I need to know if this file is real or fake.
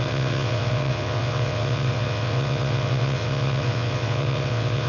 fake